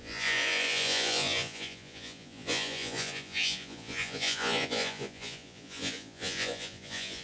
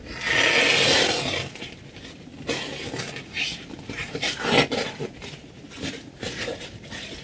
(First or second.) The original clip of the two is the second